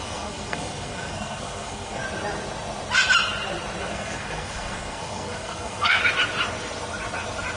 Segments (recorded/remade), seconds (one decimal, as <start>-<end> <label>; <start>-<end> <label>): 0.0-2.0 remade; 2.0-3.8 recorded; 3.8-6.0 remade; 6.0-7.6 recorded